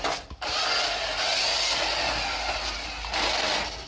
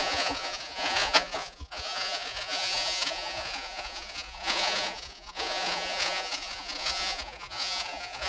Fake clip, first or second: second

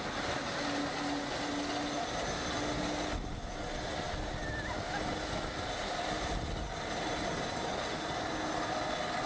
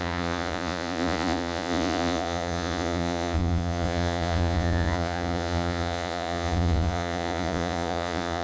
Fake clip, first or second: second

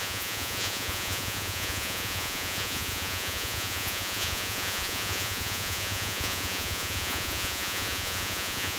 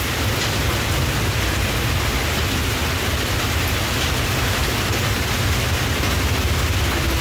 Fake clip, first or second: first